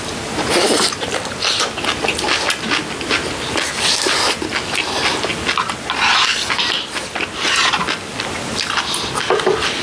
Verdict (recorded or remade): recorded